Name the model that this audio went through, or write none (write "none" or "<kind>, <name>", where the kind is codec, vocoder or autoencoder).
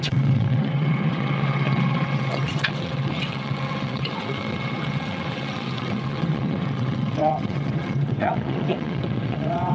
vocoder, WaveNeXt